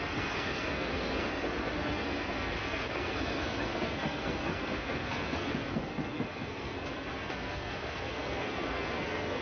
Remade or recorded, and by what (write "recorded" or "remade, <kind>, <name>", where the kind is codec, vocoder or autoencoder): remade, codec, SNAC